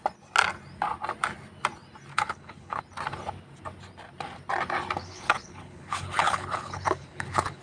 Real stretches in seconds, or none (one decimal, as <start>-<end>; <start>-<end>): 0.0-2.1; 2.8-5.0